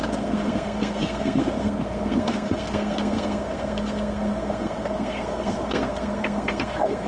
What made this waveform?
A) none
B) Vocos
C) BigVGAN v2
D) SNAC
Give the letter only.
D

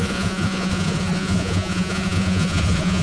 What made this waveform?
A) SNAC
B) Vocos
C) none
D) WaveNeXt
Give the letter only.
B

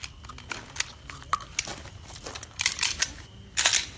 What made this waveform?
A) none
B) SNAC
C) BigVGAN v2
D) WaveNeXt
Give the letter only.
A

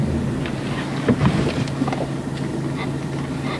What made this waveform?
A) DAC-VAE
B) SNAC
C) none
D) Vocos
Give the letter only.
C